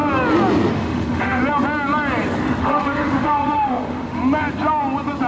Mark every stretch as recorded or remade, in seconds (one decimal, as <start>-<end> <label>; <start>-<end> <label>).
0.0-0.7 recorded; 0.7-1.4 remade; 1.4-2.6 recorded; 2.6-4.2 remade; 4.2-5.3 recorded